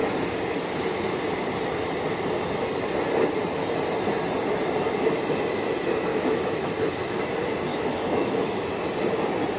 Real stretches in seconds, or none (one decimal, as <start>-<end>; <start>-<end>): 0.0-6.1; 6.7-7.7; 8.7-9.6